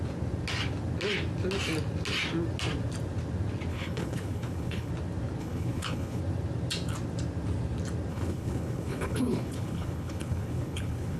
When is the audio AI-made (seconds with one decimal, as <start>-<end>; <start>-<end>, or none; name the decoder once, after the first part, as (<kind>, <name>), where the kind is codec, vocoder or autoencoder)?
3.7-4.9 (codec, HILCodec); 5.4-6.2; 8.1-11.2